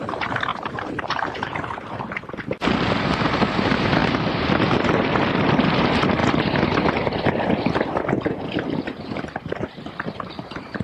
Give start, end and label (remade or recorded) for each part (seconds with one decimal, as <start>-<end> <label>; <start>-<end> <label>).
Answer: 0.0-6.2 remade; 6.2-9.2 recorded; 9.2-10.8 remade